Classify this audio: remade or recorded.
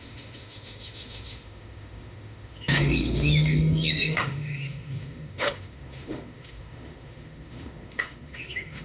remade